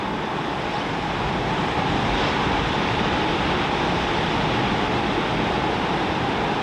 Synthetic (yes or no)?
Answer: yes